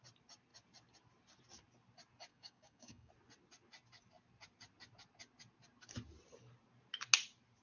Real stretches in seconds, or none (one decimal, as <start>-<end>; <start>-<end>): 0.0-2.3; 3.1-7.6